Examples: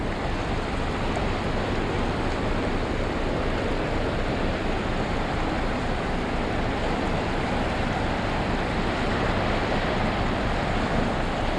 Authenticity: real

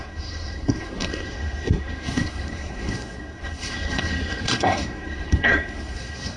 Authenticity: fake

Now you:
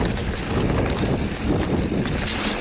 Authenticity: real